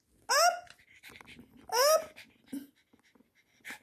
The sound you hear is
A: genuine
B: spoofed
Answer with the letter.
A